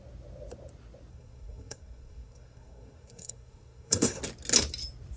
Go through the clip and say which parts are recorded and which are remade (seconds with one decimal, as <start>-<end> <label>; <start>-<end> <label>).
0.0-1.1 recorded; 1.1-4.2 remade; 4.2-5.2 recorded